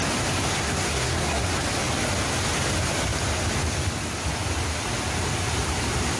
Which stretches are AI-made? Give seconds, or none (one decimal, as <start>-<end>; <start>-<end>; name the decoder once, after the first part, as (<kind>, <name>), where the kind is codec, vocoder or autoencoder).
0.5-1.6 (codec, SNAC)